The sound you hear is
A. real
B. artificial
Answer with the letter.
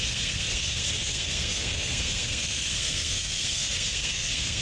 B